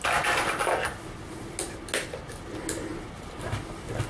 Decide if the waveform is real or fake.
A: real